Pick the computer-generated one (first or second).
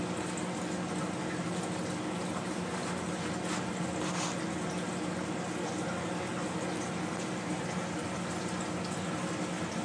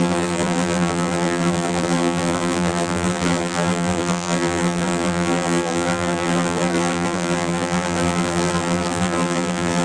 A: second